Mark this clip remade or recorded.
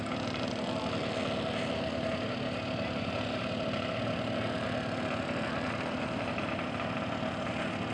recorded